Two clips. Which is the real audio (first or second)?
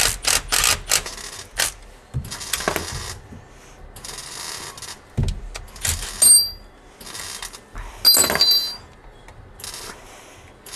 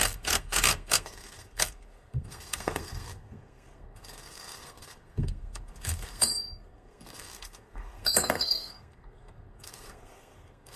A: first